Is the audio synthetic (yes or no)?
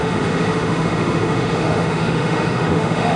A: yes